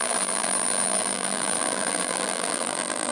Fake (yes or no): yes